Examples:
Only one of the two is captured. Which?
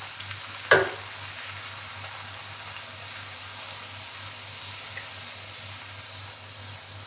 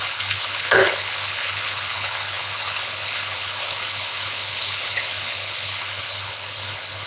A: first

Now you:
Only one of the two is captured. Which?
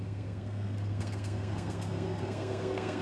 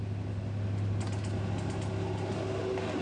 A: second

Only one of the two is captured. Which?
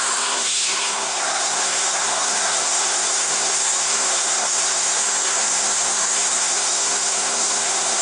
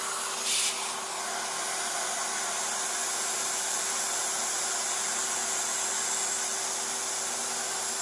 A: second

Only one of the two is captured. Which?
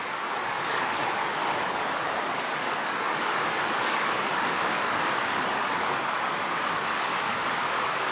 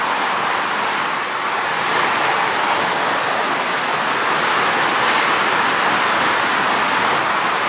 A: second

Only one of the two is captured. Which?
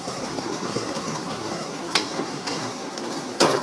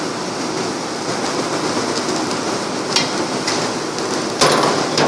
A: second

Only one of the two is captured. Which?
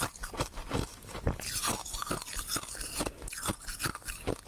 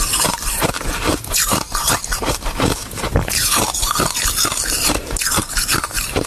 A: first